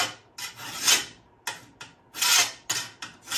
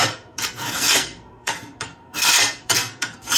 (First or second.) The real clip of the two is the first